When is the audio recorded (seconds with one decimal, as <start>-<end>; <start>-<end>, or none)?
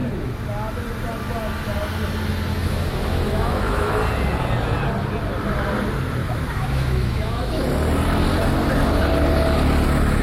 0.0-2.5; 3.9-6.2; 7.6-10.2